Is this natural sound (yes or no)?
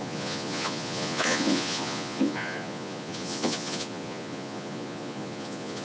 no